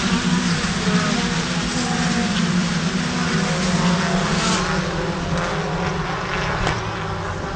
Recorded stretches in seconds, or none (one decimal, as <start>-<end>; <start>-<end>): 0.0-7.6